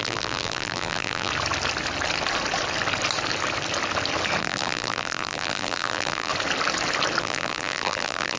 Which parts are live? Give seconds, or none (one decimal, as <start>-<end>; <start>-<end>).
1.3-4.4; 6.3-7.2